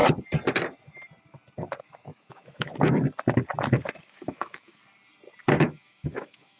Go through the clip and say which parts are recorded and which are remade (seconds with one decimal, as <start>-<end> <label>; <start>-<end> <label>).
0.0-1.8 recorded; 1.8-2.7 remade; 2.7-4.0 recorded; 4.0-4.8 remade; 4.8-5.6 recorded; 5.6-6.6 remade